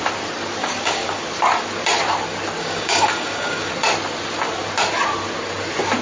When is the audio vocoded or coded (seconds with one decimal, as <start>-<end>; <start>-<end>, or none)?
0.6-1.2; 2.6-3.7